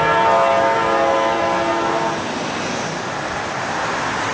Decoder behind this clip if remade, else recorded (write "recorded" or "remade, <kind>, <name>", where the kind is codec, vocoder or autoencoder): recorded